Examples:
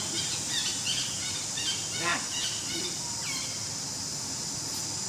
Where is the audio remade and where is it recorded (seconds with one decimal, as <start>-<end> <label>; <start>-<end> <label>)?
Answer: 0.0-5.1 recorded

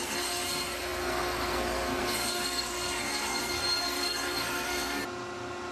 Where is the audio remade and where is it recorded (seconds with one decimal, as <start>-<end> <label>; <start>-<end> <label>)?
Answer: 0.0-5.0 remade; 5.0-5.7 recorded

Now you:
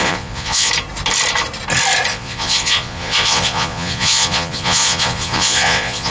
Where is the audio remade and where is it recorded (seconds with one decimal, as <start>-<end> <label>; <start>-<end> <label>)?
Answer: 0.0-0.7 remade; 0.7-2.1 recorded; 2.1-6.1 remade